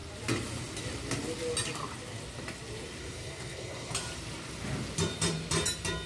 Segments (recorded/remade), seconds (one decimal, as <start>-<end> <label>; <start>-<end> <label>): 0.0-3.0 recorded; 3.0-3.9 remade; 3.9-6.1 recorded